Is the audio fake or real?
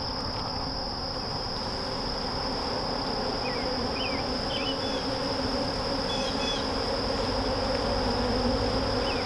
real